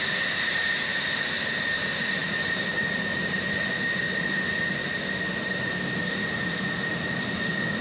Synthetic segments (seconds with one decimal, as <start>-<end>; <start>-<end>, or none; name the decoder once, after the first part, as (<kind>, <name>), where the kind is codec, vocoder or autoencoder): none